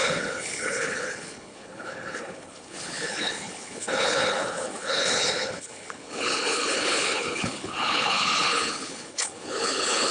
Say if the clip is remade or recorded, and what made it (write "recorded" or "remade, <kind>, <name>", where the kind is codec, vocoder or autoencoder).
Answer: remade, codec, HILCodec